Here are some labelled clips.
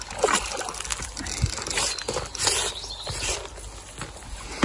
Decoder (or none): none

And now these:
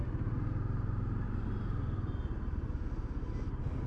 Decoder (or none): none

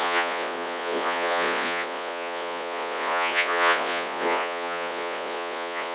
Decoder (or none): vocoder, Vocos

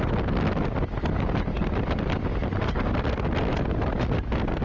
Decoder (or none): none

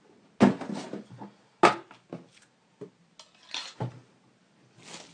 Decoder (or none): none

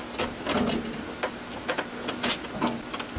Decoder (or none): none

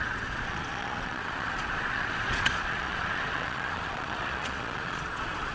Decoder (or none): vocoder, Vocos